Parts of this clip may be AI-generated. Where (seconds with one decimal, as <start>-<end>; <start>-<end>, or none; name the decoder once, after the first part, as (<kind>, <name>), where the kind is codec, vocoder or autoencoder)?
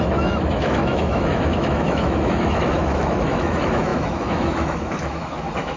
0.0-5.8 (autoencoder, DAC-VAE)